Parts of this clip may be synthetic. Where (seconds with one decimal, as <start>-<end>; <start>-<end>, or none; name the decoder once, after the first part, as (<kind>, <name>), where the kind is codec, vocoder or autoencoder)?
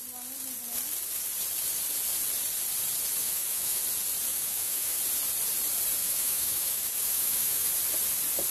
3.2-3.8 (autoencoder, DAC-VAE); 4.3-5.0; 6.0-7.7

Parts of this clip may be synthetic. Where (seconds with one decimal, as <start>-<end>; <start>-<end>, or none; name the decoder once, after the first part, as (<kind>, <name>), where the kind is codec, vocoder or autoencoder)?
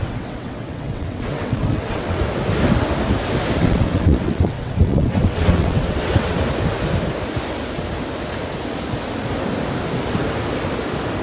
0.0-2.2 (vocoder, WaveNeXt); 3.6-6.4